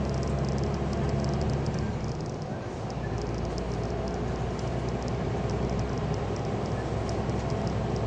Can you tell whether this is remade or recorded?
recorded